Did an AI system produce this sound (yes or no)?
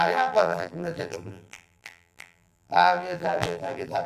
yes